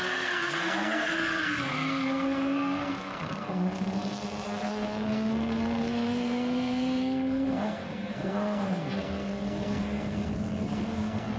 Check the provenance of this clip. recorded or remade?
remade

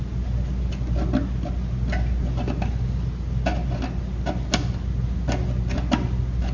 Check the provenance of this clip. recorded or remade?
recorded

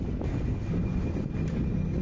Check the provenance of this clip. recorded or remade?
recorded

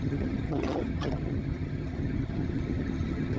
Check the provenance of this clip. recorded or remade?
remade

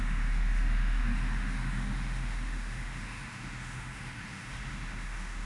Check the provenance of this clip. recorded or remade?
remade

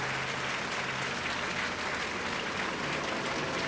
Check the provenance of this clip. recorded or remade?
recorded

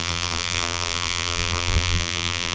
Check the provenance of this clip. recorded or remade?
remade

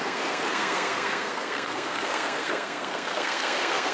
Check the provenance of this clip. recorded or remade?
remade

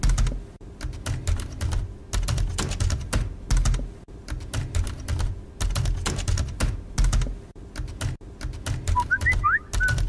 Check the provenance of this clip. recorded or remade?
recorded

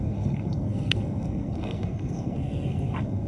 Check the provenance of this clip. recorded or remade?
remade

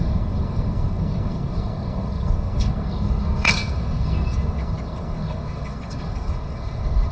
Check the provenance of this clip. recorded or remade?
remade